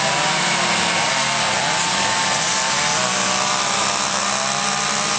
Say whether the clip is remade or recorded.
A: recorded